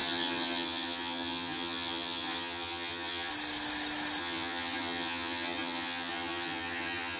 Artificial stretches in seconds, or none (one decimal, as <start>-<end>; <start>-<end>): 0.0-3.3; 4.2-7.2